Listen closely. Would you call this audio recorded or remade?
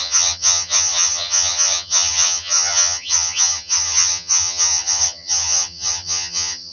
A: remade